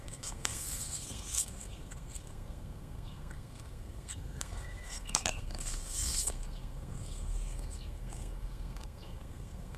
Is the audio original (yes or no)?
no